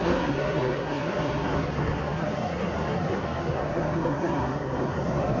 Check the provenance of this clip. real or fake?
fake